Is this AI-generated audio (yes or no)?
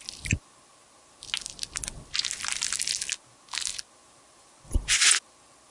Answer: no